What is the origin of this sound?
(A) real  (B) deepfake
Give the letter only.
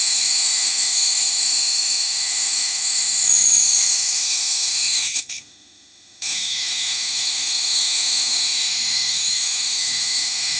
B